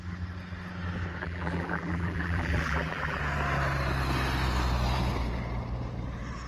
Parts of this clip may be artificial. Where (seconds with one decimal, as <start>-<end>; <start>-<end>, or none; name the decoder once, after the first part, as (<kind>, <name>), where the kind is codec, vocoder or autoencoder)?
1.2-3.2 (vocoder, BigVGAN v2)